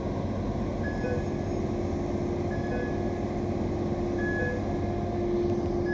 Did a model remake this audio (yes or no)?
no